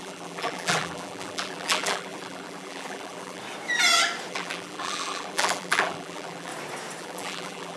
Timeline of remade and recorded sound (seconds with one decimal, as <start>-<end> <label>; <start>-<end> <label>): 0.0-3.4 remade; 3.4-4.3 recorded; 4.3-6.5 remade; 6.5-7.0 recorded; 7.0-7.8 remade